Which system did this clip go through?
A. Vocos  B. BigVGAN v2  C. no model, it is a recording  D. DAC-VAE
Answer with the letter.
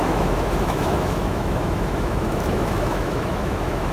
D